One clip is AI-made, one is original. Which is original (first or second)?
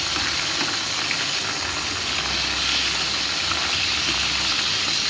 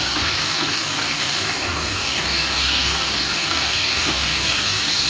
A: first